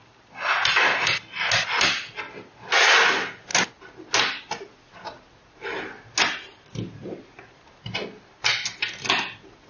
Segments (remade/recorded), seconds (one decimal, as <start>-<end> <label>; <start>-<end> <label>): 0.0-9.7 recorded